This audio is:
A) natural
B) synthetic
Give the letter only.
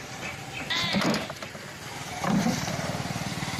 B